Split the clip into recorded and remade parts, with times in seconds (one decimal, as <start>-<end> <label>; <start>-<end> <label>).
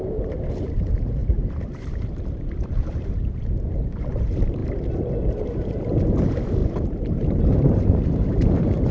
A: 0.0-4.6 remade; 4.6-5.3 recorded; 5.3-8.9 remade